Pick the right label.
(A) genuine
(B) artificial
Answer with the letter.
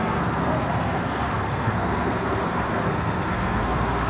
B